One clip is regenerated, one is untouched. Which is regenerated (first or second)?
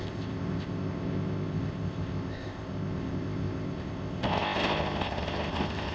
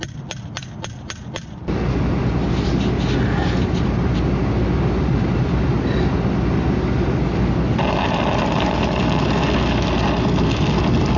first